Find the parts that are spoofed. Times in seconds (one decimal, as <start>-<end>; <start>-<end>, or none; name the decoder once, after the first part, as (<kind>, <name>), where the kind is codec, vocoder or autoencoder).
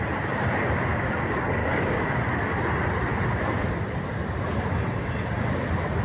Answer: 1.6-2.2 (codec, DAC)